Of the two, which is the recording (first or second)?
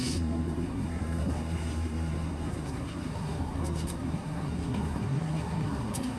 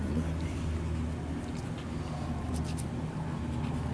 second